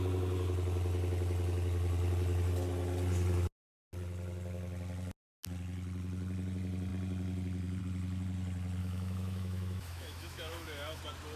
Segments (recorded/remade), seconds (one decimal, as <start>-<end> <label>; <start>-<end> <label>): 0.0-8.8 recorded; 8.8-11.0 remade; 11.0-11.4 recorded